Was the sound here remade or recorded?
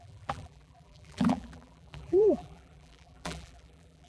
remade